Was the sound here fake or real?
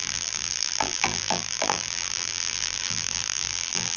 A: fake